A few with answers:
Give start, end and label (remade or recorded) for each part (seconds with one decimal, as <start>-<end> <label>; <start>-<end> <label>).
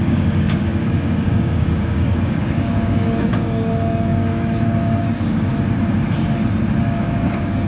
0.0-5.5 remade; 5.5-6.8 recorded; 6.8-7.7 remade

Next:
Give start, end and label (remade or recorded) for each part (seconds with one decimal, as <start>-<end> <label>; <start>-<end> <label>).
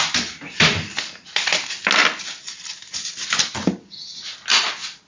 0.0-5.1 recorded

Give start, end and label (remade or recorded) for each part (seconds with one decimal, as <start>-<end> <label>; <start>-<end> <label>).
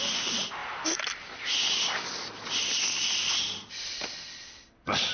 0.0-5.1 recorded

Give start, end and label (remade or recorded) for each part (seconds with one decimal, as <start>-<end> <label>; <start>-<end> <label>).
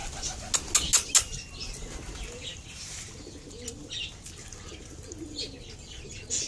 0.0-6.5 recorded